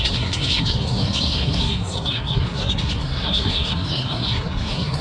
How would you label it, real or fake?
fake